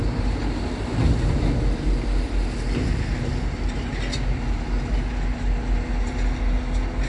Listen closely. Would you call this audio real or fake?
real